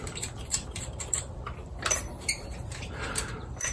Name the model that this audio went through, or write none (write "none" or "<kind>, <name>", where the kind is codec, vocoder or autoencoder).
vocoder, BigVGAN v2